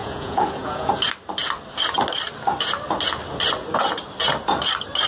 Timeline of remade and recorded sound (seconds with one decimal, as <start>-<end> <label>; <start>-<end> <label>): 0.0-0.9 remade; 0.9-5.1 recorded

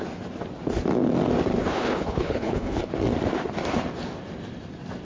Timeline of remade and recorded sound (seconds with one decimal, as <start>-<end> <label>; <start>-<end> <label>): 0.0-1.6 recorded; 1.6-2.9 remade; 2.9-5.0 recorded

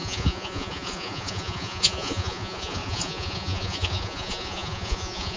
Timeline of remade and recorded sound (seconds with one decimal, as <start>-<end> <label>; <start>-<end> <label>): 0.0-5.4 remade

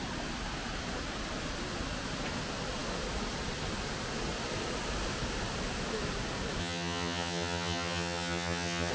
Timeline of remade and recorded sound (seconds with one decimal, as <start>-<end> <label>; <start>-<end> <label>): 0.0-6.6 recorded; 6.6-8.9 remade

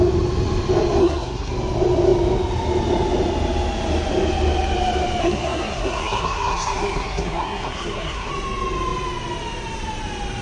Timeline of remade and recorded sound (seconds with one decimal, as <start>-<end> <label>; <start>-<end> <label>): 0.0-1.0 recorded; 1.0-1.5 remade; 1.5-5.2 recorded; 5.2-8.3 remade; 8.3-10.4 recorded